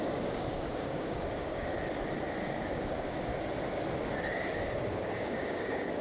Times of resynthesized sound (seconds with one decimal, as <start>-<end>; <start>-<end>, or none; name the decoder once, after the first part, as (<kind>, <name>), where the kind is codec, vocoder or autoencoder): 0.0-1.7 (codec, DAC); 2.4-3.3; 4.5-6.0